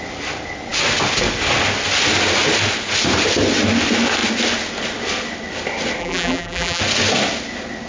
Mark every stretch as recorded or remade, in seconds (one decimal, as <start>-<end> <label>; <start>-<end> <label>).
0.0-6.0 recorded; 6.0-6.8 remade; 6.8-7.9 recorded